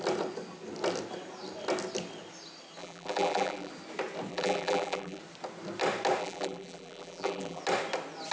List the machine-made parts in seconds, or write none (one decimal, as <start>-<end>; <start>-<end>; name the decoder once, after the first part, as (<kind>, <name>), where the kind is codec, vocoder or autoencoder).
2.8-3.7 (vocoder, BigVGAN v2); 4.3-5.2; 6.2-7.6